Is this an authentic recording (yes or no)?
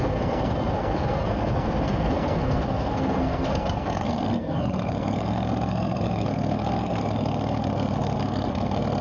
no